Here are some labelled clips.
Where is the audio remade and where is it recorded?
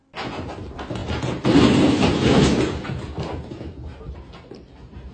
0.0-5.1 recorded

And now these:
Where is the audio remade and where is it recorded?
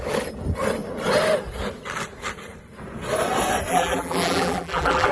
0.0-3.7 recorded; 3.7-5.1 remade